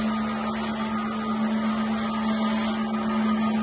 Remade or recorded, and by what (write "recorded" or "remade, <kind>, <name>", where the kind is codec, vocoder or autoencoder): recorded